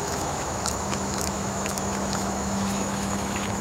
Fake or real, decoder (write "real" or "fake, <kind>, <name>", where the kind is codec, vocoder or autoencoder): fake, autoencoder, DAC-VAE